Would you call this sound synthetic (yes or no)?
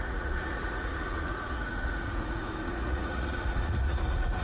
yes